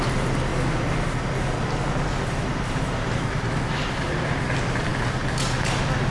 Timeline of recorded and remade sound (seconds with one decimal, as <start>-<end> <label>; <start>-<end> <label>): 0.0-6.1 recorded